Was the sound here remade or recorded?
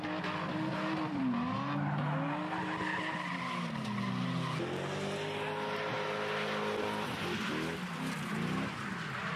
recorded